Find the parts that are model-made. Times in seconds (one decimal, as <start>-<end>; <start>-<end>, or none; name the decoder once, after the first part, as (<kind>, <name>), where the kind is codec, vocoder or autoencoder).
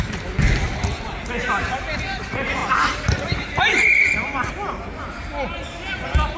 2.6-5.0 (vocoder, BigVGAN v2)